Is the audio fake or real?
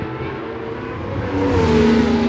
real